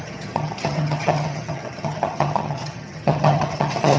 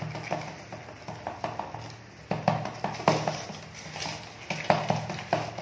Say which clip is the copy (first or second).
first